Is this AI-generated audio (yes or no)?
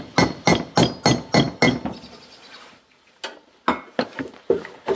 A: no